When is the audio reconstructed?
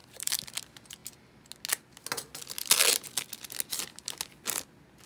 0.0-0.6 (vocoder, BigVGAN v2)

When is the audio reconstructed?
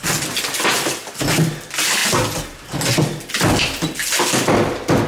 none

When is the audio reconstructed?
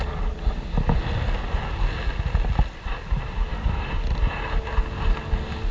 none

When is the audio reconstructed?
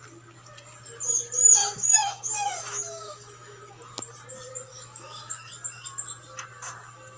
1.6-3.8 (autoencoder, DAC-VAE); 4.7-5.5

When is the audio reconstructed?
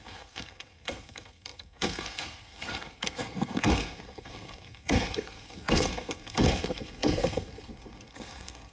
0.0-8.7 (codec, SNAC)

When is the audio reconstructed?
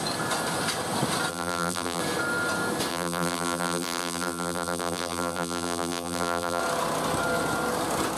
1.3-2.0 (vocoder, BigVGAN v2); 2.9-6.6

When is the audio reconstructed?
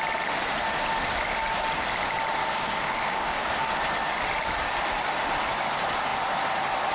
2.4-3.5 (codec, DAC)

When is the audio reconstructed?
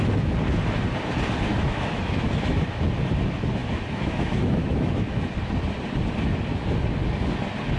1.5-2.8 (autoencoder, DAC-VAE); 3.6-5.3